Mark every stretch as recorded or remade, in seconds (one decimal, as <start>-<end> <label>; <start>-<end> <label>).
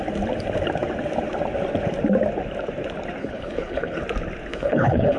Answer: 0.0-3.2 recorded; 3.2-4.0 remade; 4.0-4.5 recorded; 4.5-5.2 remade